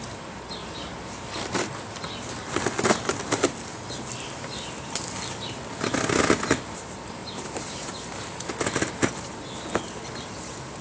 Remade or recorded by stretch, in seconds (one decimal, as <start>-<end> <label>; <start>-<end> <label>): 0.0-0.6 recorded; 0.6-1.6 remade; 1.6-7.2 recorded; 7.2-8.1 remade; 8.1-10.8 recorded